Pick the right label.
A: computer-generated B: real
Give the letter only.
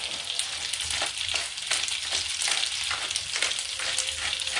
B